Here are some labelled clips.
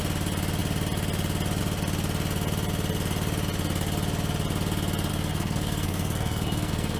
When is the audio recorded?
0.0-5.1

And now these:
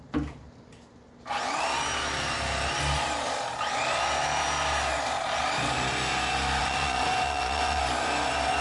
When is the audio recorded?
0.0-6.6; 7.8-8.6

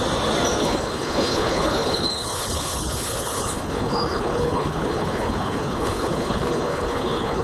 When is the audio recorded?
0.0-0.6